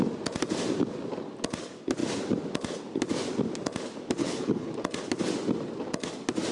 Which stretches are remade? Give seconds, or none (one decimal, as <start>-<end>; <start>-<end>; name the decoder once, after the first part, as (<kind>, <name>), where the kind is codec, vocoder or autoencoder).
4.2-4.7 (codec, HILCodec)